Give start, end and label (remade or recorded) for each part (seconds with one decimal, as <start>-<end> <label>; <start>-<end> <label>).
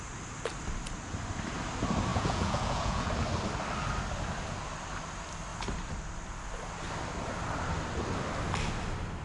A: 0.0-2.1 recorded; 2.1-3.1 remade; 3.1-9.2 recorded